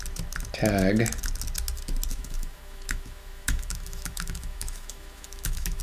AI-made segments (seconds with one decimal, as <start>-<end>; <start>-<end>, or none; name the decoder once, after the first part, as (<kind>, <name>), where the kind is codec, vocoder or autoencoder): 2.1-5.8 (autoencoder, DAC-VAE)